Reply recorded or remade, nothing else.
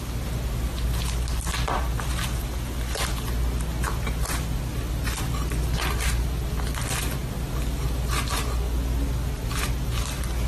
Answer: recorded